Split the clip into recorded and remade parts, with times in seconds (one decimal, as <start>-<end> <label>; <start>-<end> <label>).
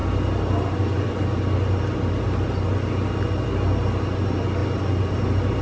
0.0-5.6 recorded